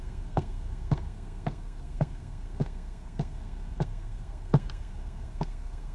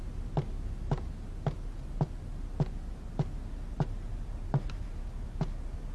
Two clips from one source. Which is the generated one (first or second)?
first